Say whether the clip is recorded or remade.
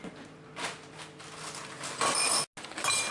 recorded